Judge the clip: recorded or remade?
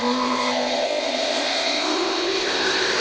remade